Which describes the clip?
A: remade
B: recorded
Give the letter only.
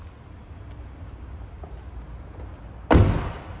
B